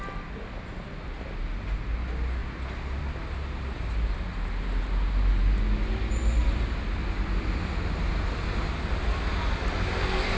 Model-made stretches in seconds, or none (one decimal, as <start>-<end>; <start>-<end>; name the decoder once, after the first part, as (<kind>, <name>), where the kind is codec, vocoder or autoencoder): none